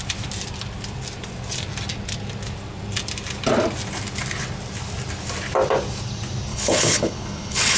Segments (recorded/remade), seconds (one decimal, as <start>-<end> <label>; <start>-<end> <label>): 0.0-6.5 recorded; 6.5-7.8 remade